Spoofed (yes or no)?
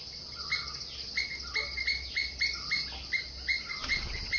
no